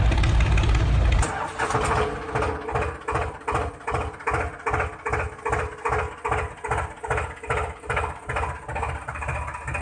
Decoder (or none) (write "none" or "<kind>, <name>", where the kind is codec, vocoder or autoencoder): none